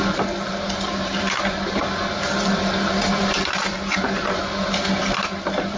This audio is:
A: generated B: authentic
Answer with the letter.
B